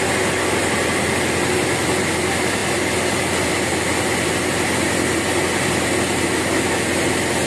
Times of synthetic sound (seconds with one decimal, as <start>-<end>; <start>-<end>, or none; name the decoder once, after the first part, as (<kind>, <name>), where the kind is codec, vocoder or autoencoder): none